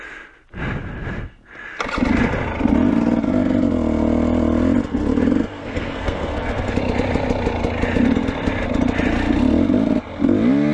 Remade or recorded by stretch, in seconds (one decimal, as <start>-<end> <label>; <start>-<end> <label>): 0.0-5.6 recorded; 5.6-6.7 remade; 6.7-10.7 recorded